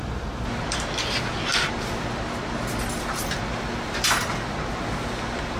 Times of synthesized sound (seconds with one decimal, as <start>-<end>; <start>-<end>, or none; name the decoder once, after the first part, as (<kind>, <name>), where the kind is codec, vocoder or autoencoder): none